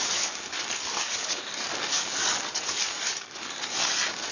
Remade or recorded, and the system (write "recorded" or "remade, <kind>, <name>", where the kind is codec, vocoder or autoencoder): remade, codec, DAC